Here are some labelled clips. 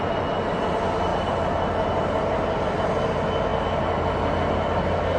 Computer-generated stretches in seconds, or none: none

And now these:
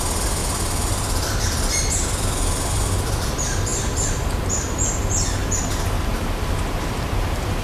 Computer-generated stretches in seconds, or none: none